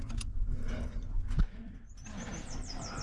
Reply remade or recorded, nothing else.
recorded